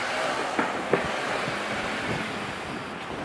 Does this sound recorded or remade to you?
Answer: recorded